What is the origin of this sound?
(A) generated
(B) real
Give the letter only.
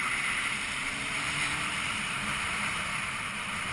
A